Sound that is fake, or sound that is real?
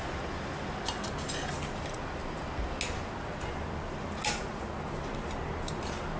real